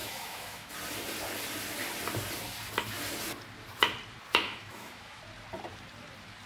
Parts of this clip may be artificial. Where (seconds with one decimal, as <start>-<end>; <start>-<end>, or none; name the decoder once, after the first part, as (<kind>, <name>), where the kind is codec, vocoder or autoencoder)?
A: 0.0-0.7 (autoencoder, DAC-VAE); 4.3-5.2